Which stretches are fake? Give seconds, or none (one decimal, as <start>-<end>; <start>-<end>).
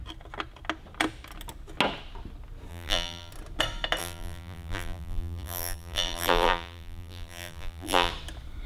2.7-3.3; 4.0-8.1